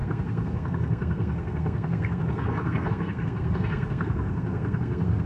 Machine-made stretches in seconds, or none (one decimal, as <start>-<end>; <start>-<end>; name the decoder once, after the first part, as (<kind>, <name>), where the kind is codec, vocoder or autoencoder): 0.0-5.3 (codec, SNAC)